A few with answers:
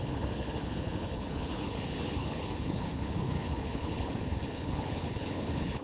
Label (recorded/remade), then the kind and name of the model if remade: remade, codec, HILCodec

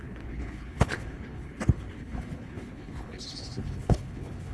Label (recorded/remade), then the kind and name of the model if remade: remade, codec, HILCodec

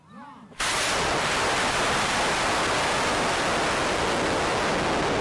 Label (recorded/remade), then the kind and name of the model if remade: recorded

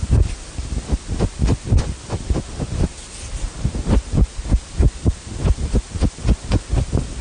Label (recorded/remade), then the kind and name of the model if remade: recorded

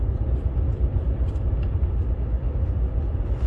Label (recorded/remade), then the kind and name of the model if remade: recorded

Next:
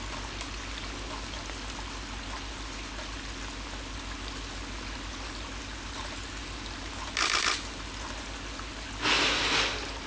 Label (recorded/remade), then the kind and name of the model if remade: recorded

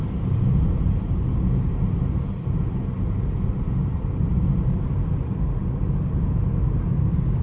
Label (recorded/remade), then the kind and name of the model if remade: recorded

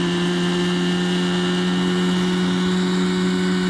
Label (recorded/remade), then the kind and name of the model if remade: recorded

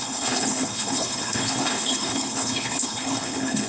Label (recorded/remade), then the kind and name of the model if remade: remade, codec, HILCodec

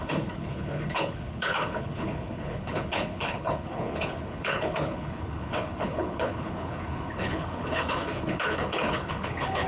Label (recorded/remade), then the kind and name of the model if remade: remade, codec, HILCodec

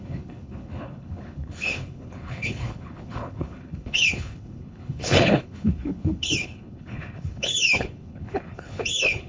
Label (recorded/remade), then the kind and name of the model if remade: remade, codec, HILCodec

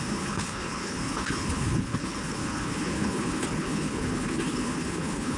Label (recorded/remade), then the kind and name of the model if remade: remade, codec, HILCodec